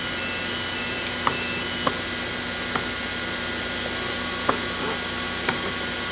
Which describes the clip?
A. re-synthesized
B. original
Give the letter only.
B